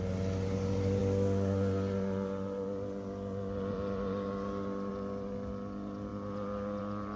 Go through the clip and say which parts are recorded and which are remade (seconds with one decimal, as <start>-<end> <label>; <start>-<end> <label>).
0.0-7.2 recorded